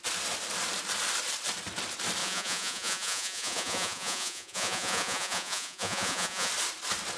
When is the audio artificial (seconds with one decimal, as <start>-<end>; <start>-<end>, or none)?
2.2-6.5